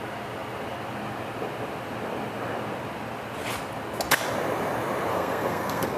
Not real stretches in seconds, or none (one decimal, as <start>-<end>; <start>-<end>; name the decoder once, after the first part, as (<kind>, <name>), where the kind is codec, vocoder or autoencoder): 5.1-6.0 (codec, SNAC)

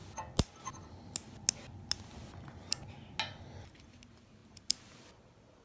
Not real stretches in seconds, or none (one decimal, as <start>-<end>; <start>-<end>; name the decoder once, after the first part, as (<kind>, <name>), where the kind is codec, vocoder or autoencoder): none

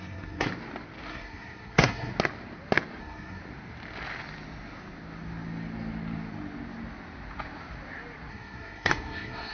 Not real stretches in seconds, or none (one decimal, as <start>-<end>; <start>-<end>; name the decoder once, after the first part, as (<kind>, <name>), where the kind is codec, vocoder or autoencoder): 0.0-0.5 (codec, SNAC); 1.1-2.1; 3.0-3.4; 8.3-9.5